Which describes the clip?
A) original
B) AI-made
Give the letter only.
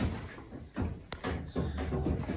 A